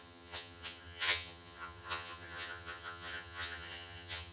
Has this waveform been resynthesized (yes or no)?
yes